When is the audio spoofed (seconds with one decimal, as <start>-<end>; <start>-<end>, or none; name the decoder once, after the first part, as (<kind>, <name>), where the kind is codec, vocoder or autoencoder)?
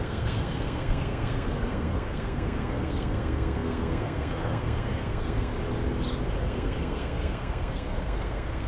0.0-5.5 (codec, SNAC); 6.4-8.7